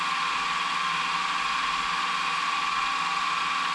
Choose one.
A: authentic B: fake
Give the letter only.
A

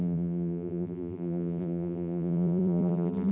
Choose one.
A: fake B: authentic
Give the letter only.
A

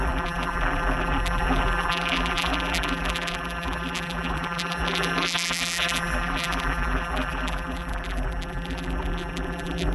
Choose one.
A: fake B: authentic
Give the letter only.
A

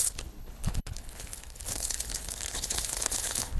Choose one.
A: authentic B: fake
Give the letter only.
B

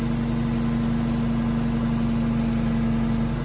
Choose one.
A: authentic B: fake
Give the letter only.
A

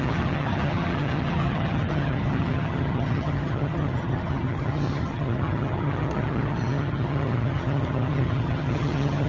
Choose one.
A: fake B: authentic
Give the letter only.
A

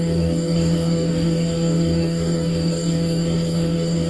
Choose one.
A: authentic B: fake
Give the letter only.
B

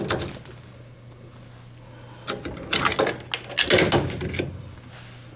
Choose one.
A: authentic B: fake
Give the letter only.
A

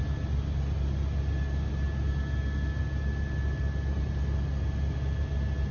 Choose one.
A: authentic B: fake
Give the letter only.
A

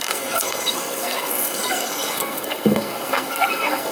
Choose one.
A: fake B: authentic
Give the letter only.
A